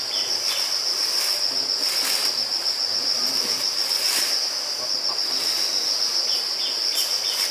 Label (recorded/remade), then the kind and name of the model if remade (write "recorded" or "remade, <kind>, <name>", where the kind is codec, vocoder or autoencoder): recorded